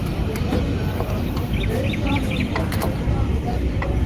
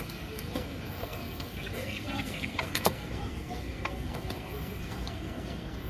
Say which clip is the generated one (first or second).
second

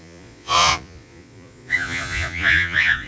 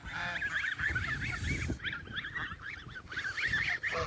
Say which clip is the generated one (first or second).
first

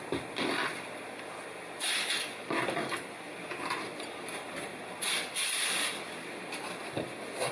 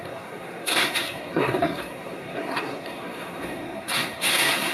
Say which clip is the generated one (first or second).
second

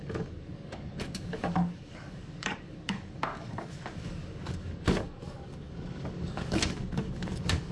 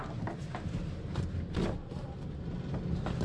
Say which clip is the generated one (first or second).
first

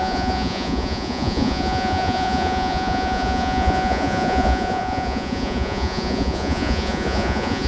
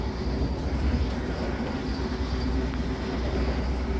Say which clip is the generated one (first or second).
first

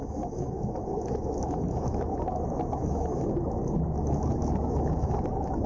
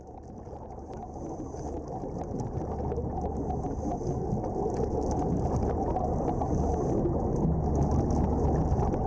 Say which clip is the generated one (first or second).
first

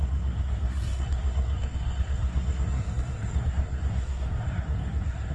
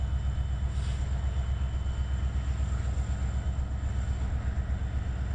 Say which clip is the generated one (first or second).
first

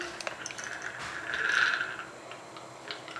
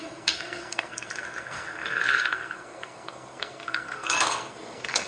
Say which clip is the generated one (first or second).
second